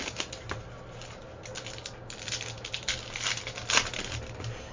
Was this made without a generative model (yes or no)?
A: yes